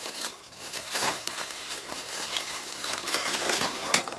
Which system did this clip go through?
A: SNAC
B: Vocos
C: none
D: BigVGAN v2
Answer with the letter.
A